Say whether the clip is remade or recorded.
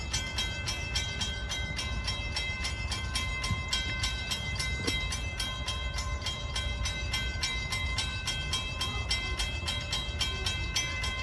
remade